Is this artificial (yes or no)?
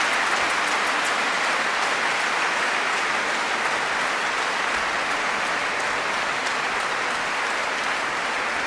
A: no